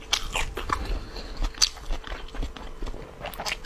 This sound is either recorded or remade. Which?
recorded